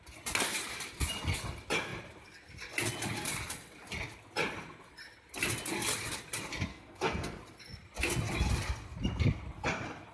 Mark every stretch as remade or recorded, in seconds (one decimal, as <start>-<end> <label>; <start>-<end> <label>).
0.0-6.7 recorded; 6.7-7.4 remade; 7.4-10.1 recorded